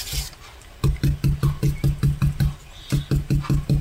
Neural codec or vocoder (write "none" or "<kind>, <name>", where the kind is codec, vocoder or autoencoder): none